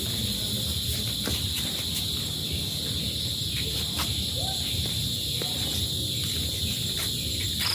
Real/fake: fake